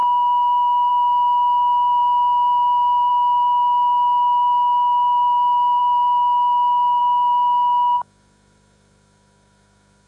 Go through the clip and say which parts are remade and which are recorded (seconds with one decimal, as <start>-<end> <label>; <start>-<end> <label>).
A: 0.0-2.0 remade; 2.0-3.1 recorded; 3.1-10.1 remade